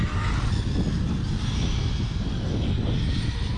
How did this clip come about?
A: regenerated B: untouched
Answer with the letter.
B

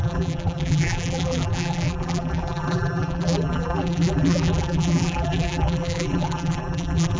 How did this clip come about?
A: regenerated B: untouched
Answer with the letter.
A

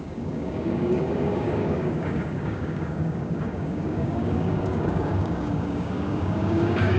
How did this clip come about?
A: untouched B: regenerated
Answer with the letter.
B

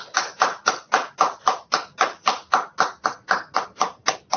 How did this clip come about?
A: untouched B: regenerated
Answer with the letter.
A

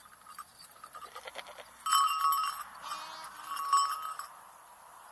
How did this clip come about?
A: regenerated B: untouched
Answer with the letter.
B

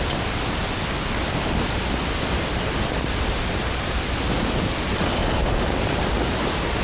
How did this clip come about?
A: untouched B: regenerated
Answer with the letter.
A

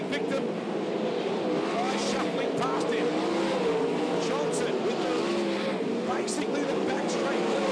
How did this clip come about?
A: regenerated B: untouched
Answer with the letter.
B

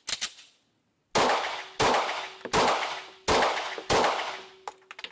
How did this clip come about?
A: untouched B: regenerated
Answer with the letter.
A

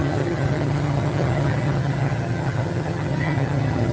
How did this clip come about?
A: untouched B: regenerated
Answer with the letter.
B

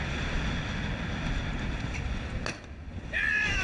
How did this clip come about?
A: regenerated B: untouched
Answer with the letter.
B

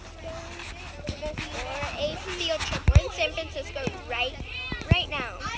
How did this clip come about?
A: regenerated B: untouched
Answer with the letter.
B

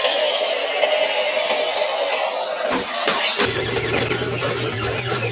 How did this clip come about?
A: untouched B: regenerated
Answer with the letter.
A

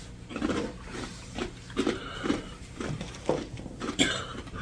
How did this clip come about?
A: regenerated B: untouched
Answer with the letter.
A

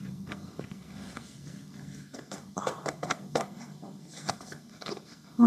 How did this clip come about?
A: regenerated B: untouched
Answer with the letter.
A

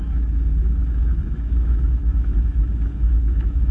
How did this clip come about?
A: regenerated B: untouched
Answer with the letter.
A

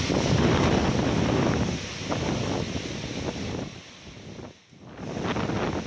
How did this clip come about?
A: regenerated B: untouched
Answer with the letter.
B